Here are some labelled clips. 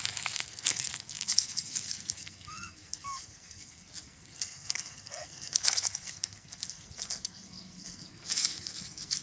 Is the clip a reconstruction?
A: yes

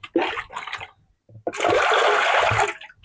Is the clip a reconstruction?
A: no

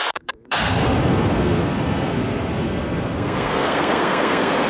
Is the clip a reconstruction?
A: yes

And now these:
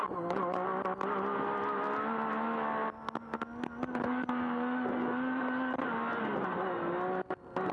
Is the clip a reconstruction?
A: no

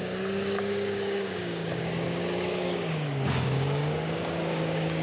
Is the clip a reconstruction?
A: yes